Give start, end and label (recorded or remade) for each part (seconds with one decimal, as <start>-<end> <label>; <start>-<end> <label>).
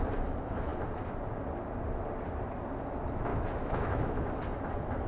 0.0-3.3 recorded; 3.3-4.3 remade; 4.3-5.1 recorded